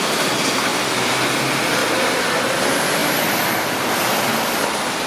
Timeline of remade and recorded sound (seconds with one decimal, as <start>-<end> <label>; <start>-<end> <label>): 0.0-0.7 remade; 0.7-1.3 recorded; 1.3-1.8 remade; 1.8-2.6 recorded; 2.6-5.1 remade